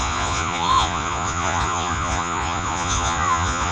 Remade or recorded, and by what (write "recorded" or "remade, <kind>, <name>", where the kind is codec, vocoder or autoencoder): remade, vocoder, Vocos